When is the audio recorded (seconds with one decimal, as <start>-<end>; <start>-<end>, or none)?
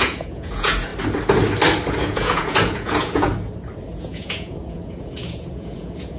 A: 0.9-1.9; 3.3-3.9